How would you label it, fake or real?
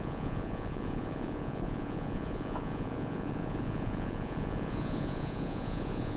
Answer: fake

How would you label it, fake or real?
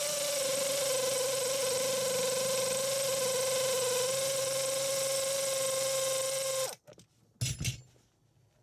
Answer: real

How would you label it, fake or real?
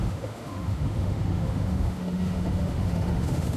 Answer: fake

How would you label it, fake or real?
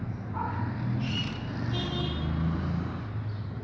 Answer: real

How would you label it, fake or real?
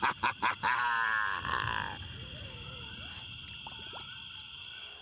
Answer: real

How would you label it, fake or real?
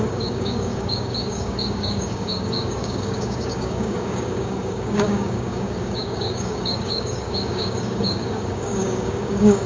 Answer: fake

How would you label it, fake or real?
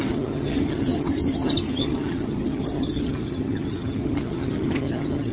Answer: fake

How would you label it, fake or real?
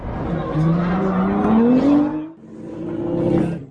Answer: real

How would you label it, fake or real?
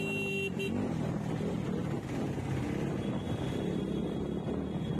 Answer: real